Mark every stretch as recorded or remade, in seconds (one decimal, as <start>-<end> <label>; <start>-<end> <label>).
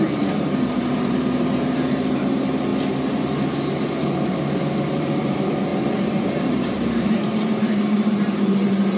0.0-2.7 remade; 2.7-4.8 recorded; 4.8-5.7 remade; 5.7-6.2 recorded; 6.2-9.0 remade